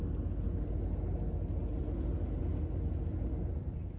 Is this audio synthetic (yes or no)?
no